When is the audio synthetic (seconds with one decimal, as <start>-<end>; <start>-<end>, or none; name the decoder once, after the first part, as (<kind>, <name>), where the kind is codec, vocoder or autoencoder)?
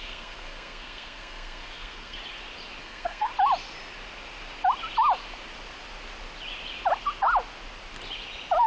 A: 0.0-2.2 (codec, SNAC); 2.8-3.3